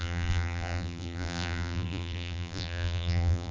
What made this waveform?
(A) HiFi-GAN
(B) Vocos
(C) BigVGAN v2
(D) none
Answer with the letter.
C